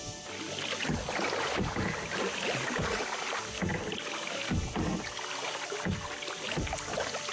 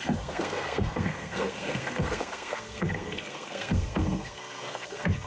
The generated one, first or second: second